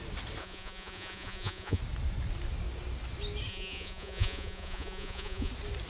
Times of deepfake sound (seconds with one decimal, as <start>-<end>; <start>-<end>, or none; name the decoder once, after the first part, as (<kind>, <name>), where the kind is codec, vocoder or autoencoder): 0.4-1.8 (vocoder, Vocos); 3.5-5.5